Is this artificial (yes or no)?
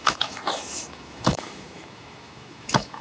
yes